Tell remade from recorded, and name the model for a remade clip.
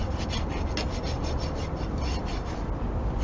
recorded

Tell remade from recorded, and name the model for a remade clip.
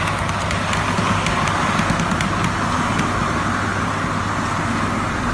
recorded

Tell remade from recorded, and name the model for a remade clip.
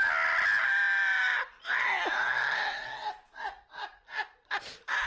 recorded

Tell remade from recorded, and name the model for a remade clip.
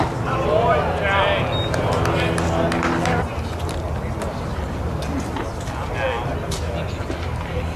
recorded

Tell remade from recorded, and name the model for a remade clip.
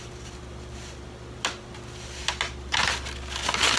recorded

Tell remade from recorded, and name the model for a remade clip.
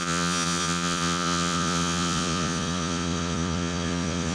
remade, vocoder, Vocos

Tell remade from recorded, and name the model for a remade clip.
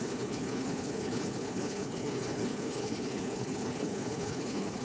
remade, codec, HILCodec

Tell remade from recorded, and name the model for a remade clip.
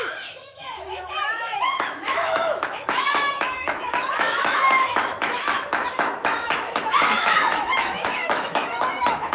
remade, autoencoder, DAC-VAE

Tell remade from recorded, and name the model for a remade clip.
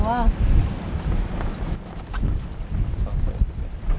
recorded